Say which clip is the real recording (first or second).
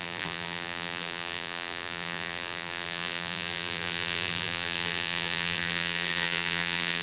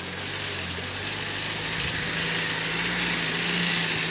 second